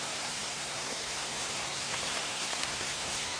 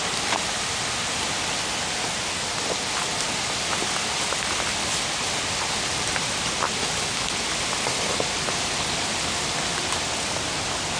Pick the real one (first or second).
second